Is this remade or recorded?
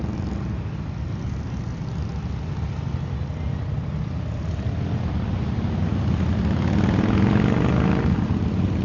recorded